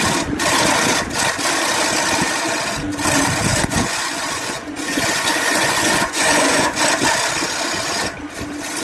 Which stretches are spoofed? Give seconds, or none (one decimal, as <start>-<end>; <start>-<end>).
3.5-6.8